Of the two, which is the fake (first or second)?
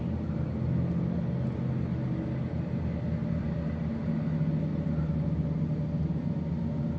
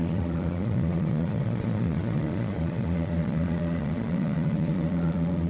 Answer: second